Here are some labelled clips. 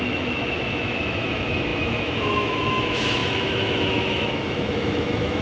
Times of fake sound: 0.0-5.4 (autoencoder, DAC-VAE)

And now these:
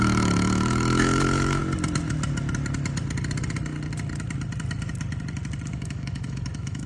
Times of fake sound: 0.0-1.6 (autoencoder, DAC-VAE); 5.7-6.9

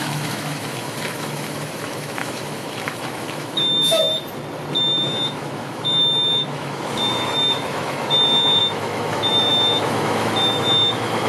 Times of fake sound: 0.0-4.1 (autoencoder, DAC-VAE); 4.8-11.3

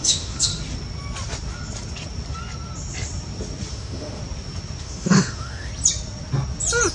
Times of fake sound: 0.0-0.5 (autoencoder, DAC-VAE); 3.7-4.2; 4.8-5.7

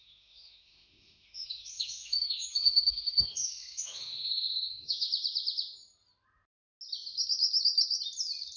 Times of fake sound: 0.0-5.1 (autoencoder, DAC-VAE)